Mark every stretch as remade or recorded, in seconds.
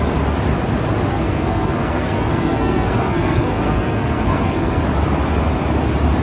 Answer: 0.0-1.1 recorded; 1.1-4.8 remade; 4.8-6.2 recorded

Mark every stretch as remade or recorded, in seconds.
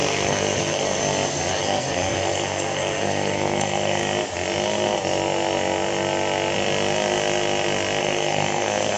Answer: 0.0-1.0 remade; 1.0-1.5 recorded; 1.5-4.0 remade; 4.0-8.0 recorded; 8.0-9.0 remade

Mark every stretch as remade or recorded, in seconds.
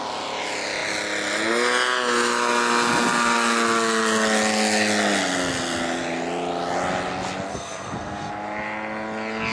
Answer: 0.0-7.5 recorded; 7.5-8.3 remade; 8.3-9.5 recorded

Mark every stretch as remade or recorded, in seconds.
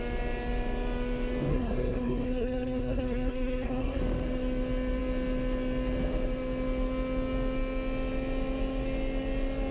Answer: 0.0-1.5 recorded; 1.5-4.0 remade; 4.0-9.7 recorded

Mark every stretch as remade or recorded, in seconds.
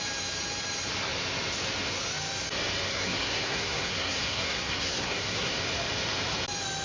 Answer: 0.0-2.9 recorded; 2.9-5.5 remade; 5.5-6.8 recorded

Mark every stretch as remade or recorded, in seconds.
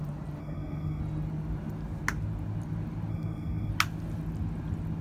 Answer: 0.0-0.4 recorded; 0.4-1.0 remade; 1.0-3.1 recorded; 3.1-3.7 remade; 3.7-5.0 recorded